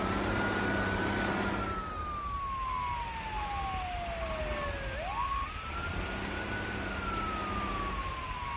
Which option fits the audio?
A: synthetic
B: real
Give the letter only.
B